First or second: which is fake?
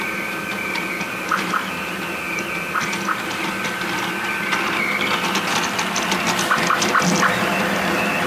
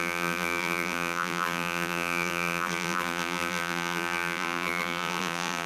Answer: second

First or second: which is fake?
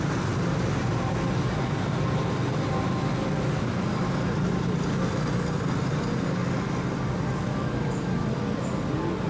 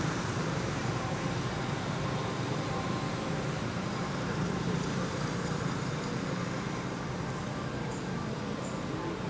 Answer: second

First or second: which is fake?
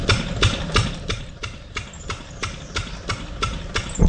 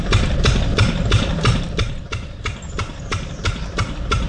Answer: second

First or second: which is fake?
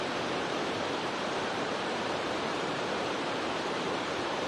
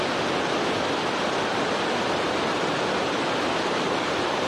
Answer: first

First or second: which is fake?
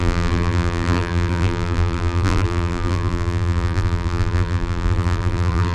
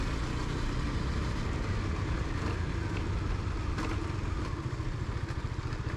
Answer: first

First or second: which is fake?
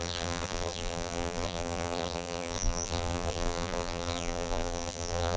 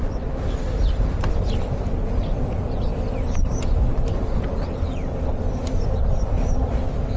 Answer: first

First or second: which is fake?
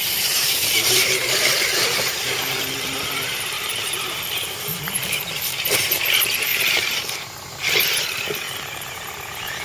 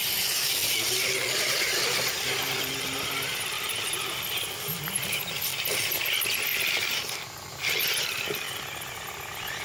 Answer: first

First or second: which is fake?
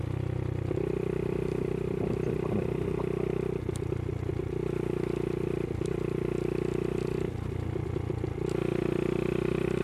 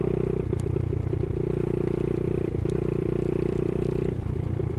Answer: second